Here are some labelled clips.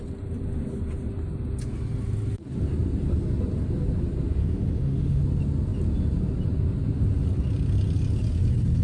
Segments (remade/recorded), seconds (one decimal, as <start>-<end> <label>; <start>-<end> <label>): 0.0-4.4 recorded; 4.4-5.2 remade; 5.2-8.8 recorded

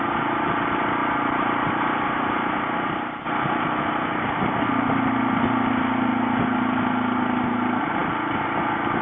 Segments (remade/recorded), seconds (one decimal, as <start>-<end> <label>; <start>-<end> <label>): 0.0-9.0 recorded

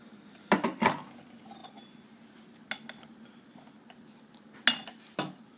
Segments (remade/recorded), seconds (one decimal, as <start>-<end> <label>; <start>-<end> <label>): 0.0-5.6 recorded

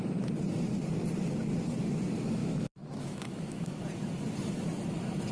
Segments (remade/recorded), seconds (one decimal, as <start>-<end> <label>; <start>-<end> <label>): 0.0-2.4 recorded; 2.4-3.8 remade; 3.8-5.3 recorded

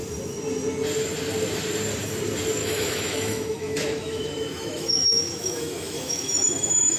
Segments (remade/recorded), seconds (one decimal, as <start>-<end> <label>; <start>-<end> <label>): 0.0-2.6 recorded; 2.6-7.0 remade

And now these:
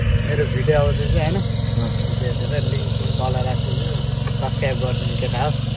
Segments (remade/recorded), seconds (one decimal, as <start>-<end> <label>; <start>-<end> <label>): 0.0-2.8 recorded; 2.8-3.3 remade; 3.3-5.8 recorded